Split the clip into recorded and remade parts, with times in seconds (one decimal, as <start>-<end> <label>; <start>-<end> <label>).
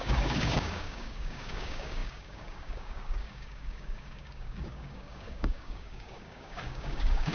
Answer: 0.0-7.3 remade